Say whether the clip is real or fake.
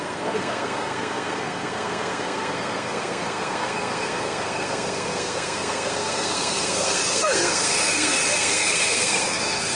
fake